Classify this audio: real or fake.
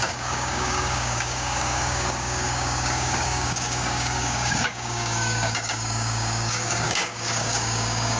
fake